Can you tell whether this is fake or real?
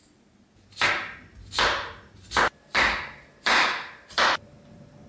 real